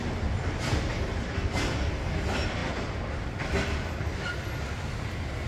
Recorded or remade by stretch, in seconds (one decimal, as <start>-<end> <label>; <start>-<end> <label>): 0.0-5.5 recorded